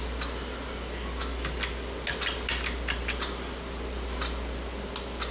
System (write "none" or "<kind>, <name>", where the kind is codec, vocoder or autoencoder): none